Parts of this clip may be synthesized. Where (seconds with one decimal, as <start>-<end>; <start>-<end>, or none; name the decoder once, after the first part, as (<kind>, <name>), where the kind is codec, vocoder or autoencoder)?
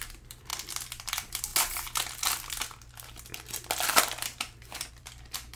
0.0-1.5 (vocoder, BigVGAN v2); 4.9-5.6